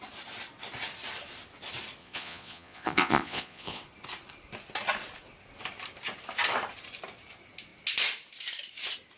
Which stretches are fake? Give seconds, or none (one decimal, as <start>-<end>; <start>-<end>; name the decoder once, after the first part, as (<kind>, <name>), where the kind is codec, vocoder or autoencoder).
2.0-3.8 (vocoder, Vocos)